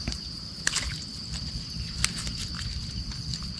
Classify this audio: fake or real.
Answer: real